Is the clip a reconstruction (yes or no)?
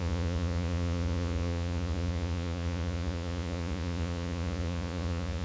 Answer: yes